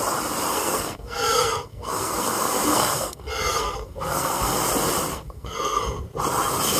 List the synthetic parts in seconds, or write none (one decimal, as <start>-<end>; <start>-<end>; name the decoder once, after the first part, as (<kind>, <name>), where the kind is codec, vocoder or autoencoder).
0.5-4.6 (codec, SNAC); 5.1-5.8